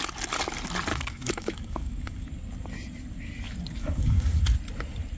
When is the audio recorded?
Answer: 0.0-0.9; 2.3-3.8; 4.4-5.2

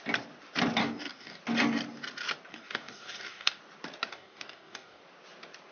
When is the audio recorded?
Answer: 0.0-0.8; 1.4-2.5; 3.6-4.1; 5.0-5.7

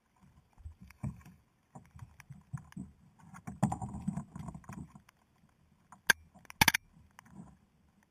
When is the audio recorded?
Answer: 0.0-0.8; 1.4-8.1

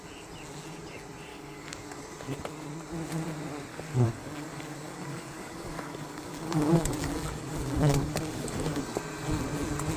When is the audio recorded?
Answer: 0.0-1.3; 2.0-3.7; 8.8-10.0

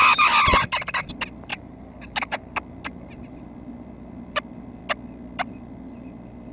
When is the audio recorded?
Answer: 0.0-1.5; 2.6-6.5

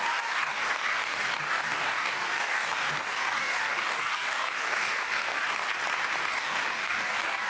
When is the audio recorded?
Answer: 5.7-6.3